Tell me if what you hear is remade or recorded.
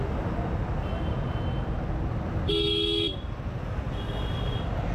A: recorded